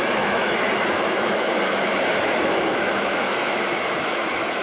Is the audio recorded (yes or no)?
no